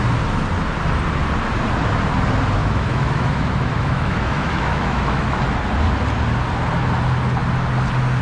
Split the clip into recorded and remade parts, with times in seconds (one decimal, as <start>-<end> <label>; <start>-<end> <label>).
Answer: 0.0-2.6 recorded; 2.6-5.4 remade; 5.4-8.2 recorded